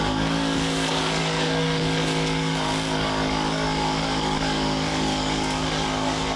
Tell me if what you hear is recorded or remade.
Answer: remade